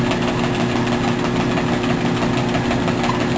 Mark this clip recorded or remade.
recorded